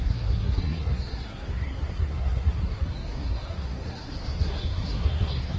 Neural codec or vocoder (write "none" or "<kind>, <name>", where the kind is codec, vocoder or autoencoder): codec, SNAC